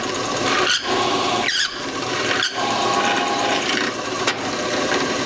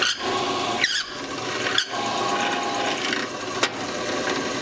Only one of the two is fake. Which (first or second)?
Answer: first